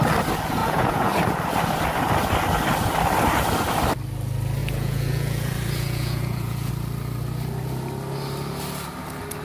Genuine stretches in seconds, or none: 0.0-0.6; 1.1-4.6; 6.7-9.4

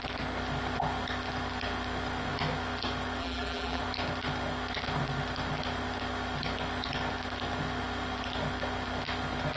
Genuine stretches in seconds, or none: 0.0-3.2; 3.8-9.6

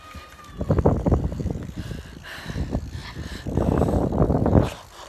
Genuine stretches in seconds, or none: 0.0-1.4; 2.3-5.1

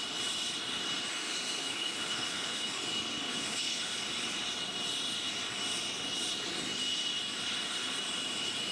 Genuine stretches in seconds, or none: 0.0-1.6; 2.8-3.3; 4.0-8.7